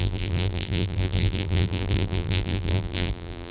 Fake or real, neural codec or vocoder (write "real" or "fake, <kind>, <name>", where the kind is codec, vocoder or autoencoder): fake, vocoder, BigVGAN v2